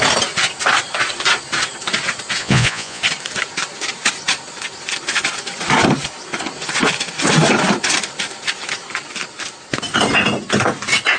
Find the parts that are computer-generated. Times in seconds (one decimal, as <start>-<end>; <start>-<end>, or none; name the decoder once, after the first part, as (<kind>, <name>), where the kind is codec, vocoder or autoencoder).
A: 2.4-3.0 (vocoder, Vocos)